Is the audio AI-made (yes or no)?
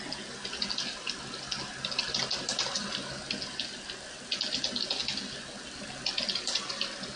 no